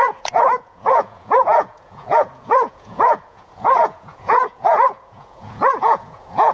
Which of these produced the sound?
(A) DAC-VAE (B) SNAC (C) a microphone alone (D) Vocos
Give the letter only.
D